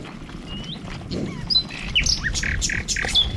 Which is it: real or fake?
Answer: real